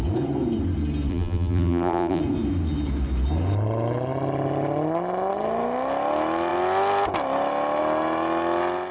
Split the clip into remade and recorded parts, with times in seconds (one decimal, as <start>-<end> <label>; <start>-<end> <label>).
0.0-1.1 recorded; 1.1-2.2 remade; 2.2-8.9 recorded